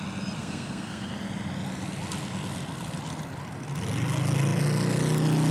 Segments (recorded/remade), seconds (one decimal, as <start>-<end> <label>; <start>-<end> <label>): 0.0-0.4 recorded; 0.4-1.1 remade; 1.1-5.5 recorded